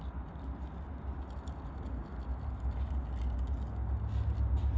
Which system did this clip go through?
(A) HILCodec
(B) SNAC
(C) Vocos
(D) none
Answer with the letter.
D